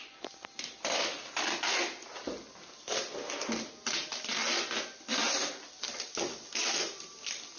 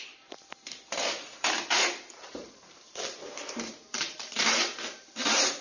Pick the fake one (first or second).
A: second